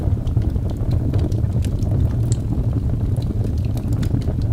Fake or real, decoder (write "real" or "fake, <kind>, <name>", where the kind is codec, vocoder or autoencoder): real